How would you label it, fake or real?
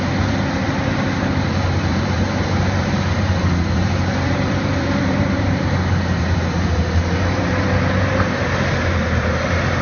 fake